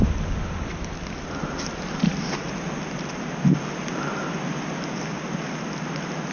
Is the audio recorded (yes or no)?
yes